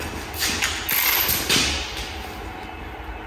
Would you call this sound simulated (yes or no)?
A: no